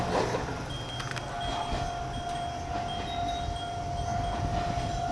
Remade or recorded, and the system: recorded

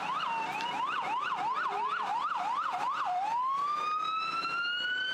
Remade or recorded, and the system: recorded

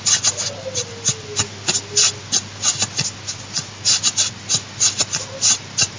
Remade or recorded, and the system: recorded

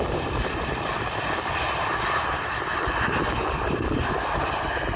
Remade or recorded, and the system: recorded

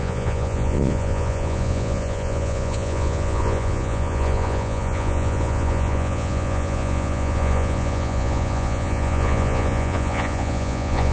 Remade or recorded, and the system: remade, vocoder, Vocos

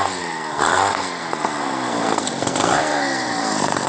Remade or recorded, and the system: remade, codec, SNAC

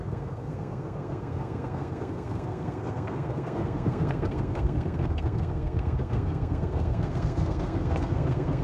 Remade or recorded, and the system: remade, codec, SNAC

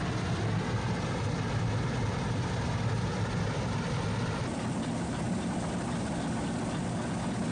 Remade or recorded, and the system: recorded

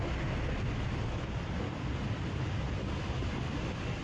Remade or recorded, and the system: recorded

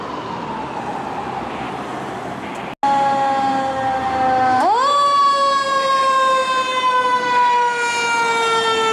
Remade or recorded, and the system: recorded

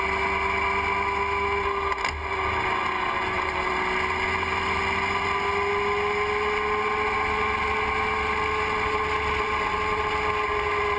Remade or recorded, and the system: recorded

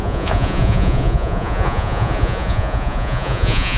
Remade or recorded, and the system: remade, vocoder, Vocos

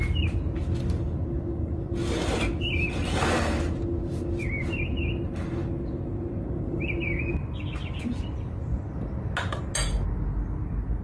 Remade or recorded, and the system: recorded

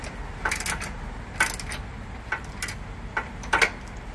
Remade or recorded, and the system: recorded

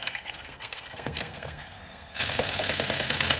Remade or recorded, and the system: remade, codec, SNAC